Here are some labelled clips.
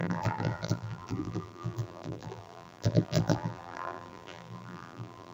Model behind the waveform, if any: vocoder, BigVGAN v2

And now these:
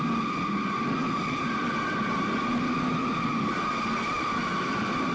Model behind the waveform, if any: none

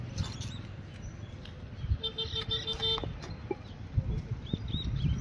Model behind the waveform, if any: none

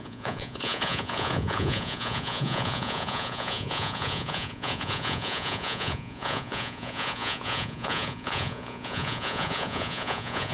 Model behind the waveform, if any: vocoder, Vocos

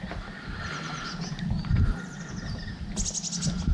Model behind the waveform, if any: none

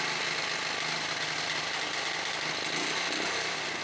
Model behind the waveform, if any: none